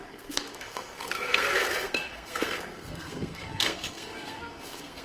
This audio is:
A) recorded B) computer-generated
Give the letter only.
B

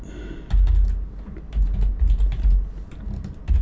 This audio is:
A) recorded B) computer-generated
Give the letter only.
A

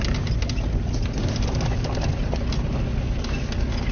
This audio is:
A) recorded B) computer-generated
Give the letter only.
A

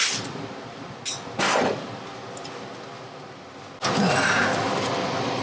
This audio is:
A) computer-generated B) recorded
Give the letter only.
B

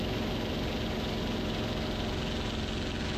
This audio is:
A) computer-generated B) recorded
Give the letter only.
B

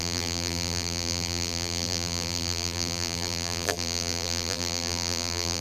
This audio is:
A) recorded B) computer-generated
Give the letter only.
B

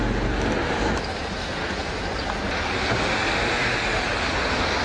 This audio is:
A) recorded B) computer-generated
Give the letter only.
A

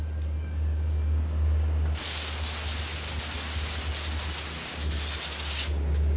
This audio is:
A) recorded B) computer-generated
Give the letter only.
A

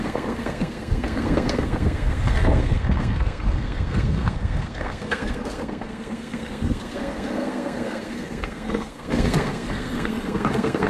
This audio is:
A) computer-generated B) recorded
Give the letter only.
A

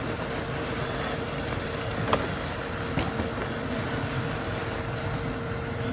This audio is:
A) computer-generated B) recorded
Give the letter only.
B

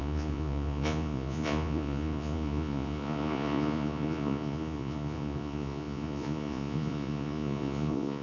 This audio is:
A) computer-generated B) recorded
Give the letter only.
A